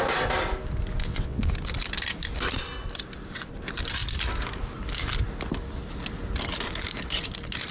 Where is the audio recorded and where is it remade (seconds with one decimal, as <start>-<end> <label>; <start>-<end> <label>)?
0.0-1.0 recorded; 1.0-1.5 remade; 1.5-7.7 recorded